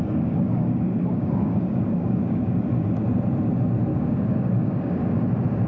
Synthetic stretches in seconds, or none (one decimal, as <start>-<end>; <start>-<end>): 0.0-2.6; 3.9-5.2